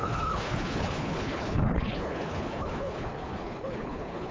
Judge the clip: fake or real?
fake